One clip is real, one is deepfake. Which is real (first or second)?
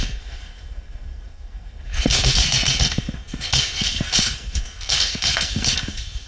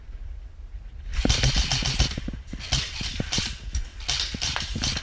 second